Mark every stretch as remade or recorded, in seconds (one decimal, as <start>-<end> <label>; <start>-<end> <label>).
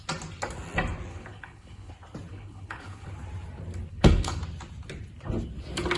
0.0-1.1 recorded; 1.1-1.9 remade; 1.9-2.3 recorded; 2.3-3.1 remade; 3.1-3.9 recorded; 3.9-4.4 remade; 4.4-6.0 recorded